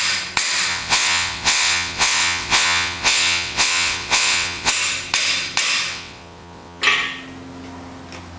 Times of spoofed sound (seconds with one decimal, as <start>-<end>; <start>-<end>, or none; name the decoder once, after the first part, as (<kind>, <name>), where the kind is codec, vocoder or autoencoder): 0.7-4.7 (vocoder, WaveNeXt); 5.9-6.8

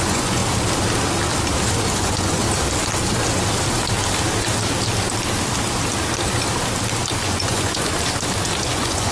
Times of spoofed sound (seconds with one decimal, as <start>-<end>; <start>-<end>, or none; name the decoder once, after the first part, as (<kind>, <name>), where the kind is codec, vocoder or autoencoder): 0.0-0.4 (vocoder, Vocos); 1.9-2.4; 7.2-7.9; 8.6-9.1

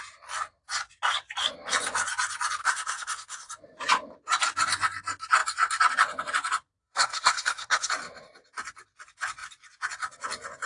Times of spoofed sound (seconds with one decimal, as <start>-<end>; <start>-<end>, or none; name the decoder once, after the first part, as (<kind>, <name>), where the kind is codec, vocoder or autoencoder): 2.6-3.5 (codec, SNAC); 6.8-7.9

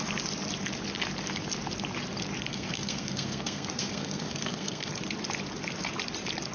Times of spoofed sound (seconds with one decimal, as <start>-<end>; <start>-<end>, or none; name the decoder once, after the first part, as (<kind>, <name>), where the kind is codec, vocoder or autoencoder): 2.5-4.9 (codec, SNAC)